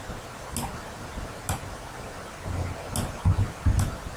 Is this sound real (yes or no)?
yes